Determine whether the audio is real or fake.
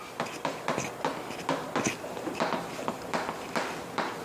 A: real